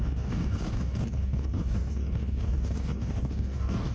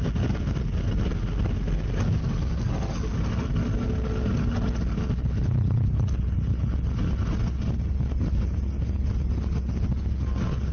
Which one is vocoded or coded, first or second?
first